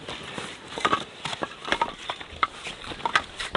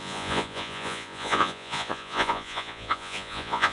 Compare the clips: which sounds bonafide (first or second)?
first